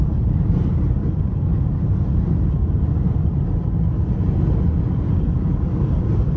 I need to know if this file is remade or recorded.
recorded